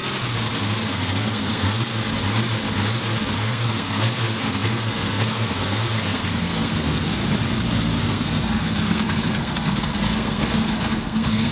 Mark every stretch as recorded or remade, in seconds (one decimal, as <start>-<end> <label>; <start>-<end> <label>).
0.0-0.9 recorded; 0.9-1.9 remade; 1.9-3.4 recorded; 3.4-7.2 remade; 7.2-8.0 recorded; 8.0-11.5 remade

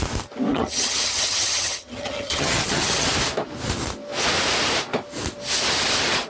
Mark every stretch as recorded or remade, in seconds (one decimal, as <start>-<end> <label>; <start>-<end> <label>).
0.0-0.5 recorded; 0.5-3.1 remade; 3.1-6.3 recorded

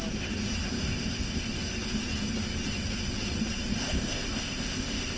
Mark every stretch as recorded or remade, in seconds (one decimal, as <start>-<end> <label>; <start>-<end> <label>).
0.0-0.7 recorded; 0.7-1.5 remade; 1.5-3.8 recorded; 3.8-5.2 remade